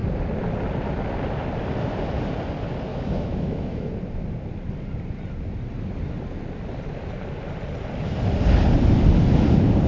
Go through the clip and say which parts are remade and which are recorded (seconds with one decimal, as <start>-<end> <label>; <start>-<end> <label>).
0.0-2.9 recorded; 2.9-3.9 remade; 3.9-9.9 recorded